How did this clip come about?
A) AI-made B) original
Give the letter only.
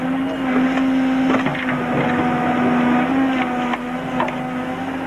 B